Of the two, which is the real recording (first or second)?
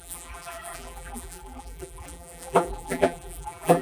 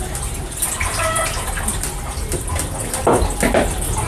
second